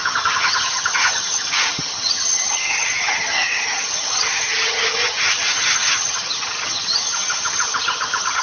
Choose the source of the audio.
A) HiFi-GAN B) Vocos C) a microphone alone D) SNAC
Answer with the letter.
A